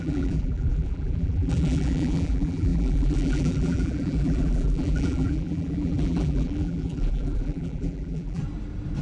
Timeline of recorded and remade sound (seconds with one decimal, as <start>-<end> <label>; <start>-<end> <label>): 0.0-8.4 remade; 8.4-9.0 recorded